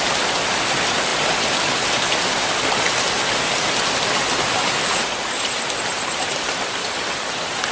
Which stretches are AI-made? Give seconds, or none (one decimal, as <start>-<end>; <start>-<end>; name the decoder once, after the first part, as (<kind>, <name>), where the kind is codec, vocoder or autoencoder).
none